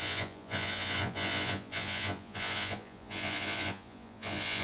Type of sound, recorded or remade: remade